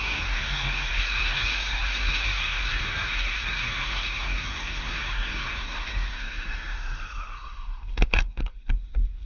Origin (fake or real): fake